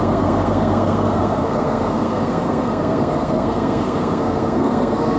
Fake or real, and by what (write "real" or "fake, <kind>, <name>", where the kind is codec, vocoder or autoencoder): fake, codec, SNAC